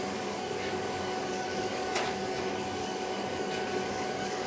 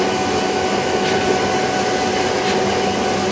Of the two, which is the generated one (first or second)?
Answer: first